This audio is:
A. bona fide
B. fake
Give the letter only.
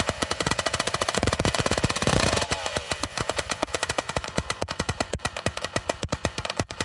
B